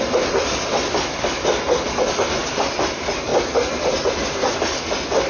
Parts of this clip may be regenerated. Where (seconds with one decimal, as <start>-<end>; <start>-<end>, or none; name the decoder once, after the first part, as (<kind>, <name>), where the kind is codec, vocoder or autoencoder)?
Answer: none